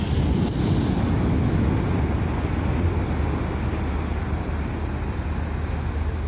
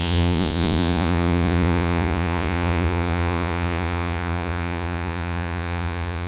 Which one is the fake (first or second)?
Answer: second